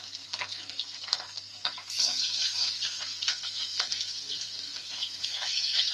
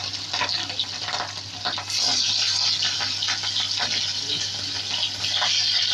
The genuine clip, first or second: second